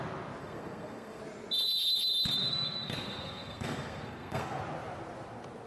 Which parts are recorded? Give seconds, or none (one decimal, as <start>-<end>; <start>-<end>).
0.0-0.4; 1.2-2.5; 4.6-5.7